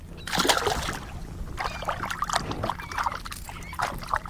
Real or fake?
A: real